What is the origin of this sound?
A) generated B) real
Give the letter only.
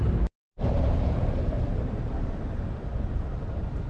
B